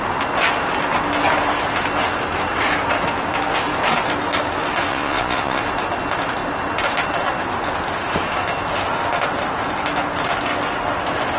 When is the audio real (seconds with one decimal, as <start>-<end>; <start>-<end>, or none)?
0.0-4.9; 5.6-11.4